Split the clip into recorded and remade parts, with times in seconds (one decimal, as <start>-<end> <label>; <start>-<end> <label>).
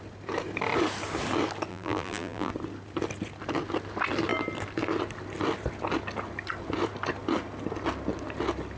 0.0-1.7 recorded; 1.7-2.5 remade; 2.5-8.8 recorded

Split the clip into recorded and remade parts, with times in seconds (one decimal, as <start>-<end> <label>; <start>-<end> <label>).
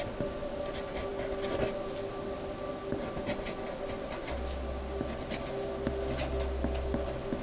0.0-7.4 recorded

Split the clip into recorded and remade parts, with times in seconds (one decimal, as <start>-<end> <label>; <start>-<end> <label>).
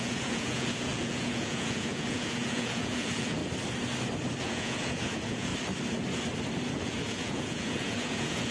0.0-3.4 remade; 3.4-4.4 recorded; 4.4-5.5 remade; 5.5-6.7 recorded; 6.7-8.5 remade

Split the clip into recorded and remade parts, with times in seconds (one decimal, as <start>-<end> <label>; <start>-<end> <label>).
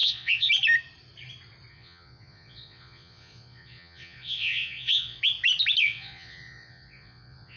0.0-0.5 remade; 0.5-1.7 recorded; 1.7-5.2 remade; 5.2-5.8 recorded; 5.8-7.6 remade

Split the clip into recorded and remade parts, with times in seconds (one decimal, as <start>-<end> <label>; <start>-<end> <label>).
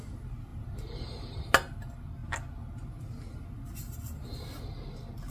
0.0-5.3 recorded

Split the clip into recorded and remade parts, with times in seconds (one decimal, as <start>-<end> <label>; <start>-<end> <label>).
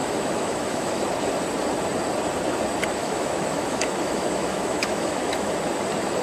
0.0-1.0 remade; 1.0-3.0 recorded; 3.0-5.5 remade; 5.5-6.2 recorded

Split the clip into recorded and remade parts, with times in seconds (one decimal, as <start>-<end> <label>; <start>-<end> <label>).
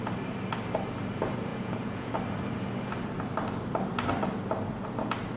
0.0-1.5 recorded; 1.5-2.1 remade; 2.1-5.4 recorded